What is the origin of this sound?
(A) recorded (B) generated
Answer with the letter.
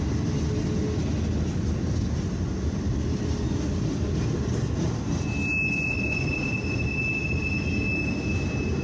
A